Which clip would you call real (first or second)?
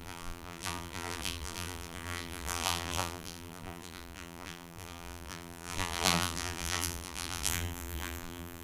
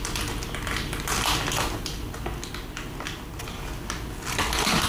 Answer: second